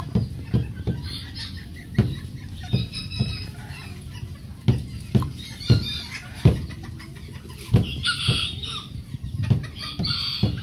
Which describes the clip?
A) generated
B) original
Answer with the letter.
B